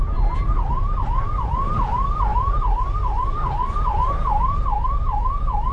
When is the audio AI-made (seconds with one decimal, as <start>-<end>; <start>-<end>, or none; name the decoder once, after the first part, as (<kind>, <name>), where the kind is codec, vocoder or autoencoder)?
none